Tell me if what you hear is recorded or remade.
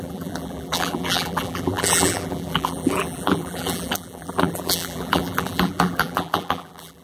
remade